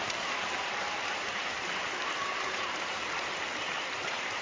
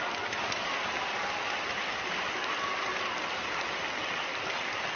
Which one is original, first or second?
second